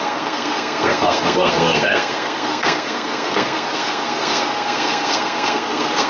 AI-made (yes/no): yes